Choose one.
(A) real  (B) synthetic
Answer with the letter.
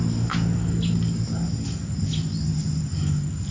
A